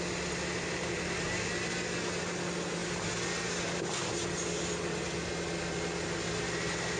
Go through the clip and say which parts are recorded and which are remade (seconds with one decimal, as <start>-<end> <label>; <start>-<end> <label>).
0.0-7.0 recorded